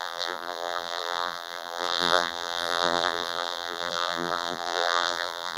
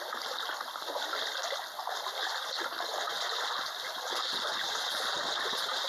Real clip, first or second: second